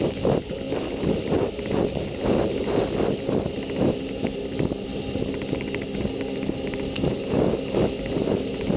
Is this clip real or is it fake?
real